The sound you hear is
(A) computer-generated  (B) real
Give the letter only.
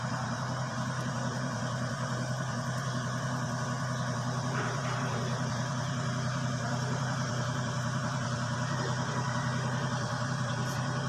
A